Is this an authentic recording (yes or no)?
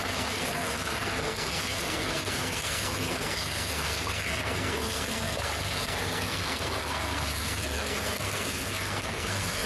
no